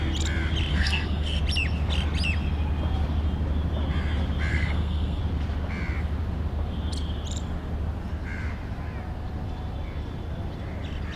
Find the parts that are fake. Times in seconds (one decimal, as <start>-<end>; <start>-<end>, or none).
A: 0.7-1.4; 4.5-5.2